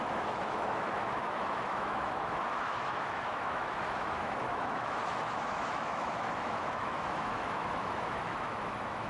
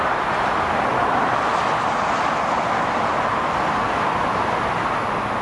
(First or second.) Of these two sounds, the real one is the second